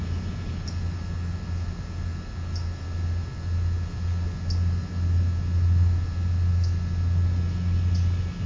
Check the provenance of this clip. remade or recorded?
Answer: recorded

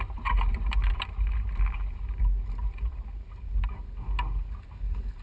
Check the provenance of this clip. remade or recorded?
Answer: recorded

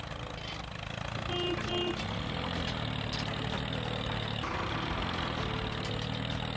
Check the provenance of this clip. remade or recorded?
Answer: recorded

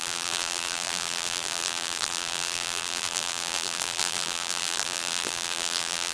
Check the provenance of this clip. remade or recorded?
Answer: remade